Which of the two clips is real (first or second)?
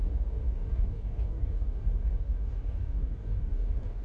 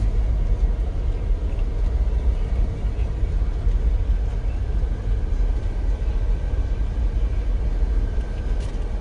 second